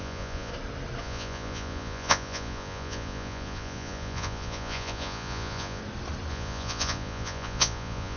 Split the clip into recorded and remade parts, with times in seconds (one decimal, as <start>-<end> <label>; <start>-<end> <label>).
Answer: 0.0-0.5 remade; 0.5-1.0 recorded; 1.0-5.8 remade; 5.8-6.3 recorded; 6.3-8.2 remade